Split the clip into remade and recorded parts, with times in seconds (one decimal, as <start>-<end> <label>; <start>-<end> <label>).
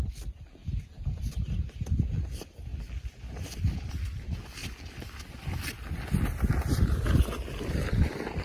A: 0.0-0.6 recorded; 0.6-1.2 remade; 1.2-8.4 recorded